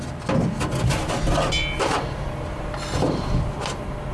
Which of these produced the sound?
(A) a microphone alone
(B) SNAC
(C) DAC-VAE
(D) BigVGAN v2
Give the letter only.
A